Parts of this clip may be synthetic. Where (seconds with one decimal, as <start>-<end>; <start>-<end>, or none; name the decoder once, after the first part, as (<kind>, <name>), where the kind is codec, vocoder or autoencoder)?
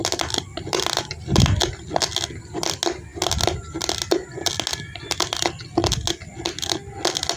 0.5-1.4 (vocoder, BigVGAN v2)